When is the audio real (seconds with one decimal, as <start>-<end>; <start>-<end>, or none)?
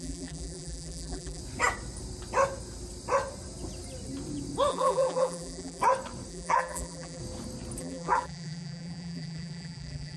1.4-4.7; 5.8-6.3; 7.2-7.8